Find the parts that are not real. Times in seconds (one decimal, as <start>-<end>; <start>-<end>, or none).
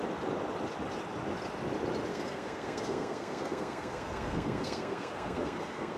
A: 2.1-6.0